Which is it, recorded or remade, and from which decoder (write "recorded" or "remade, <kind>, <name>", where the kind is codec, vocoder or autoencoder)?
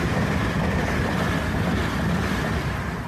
recorded